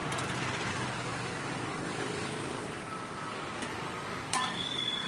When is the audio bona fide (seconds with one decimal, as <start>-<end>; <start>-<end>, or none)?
0.0-0.7

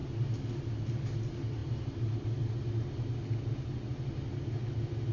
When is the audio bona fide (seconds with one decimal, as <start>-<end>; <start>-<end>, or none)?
0.0-5.1

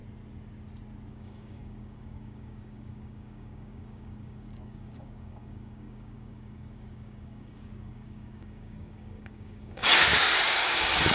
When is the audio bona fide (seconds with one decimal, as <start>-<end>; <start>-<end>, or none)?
0.0-1.1

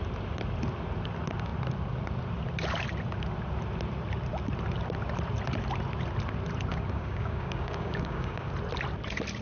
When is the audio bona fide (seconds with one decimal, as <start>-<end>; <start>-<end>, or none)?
0.0-6.7; 8.5-9.4